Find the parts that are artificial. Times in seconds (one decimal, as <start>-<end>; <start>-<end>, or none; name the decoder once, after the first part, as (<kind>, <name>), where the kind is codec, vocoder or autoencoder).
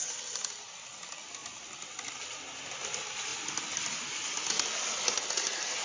none